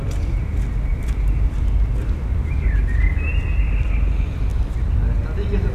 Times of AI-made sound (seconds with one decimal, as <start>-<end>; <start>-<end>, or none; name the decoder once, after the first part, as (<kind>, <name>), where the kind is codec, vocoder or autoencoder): none